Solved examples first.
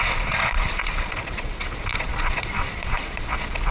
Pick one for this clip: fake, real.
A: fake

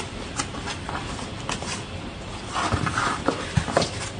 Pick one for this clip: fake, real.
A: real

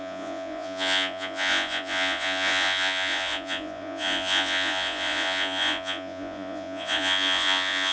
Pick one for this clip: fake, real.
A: fake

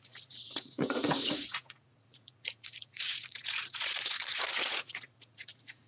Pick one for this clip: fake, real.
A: fake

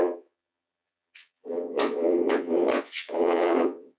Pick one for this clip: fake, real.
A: fake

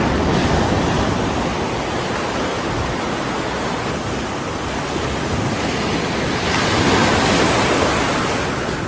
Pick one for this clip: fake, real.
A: real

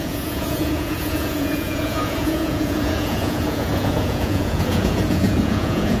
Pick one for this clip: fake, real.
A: fake